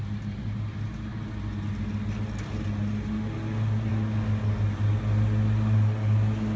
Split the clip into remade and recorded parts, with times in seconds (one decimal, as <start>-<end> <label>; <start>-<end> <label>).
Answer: 0.0-6.6 recorded